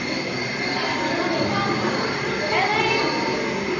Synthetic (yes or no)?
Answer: no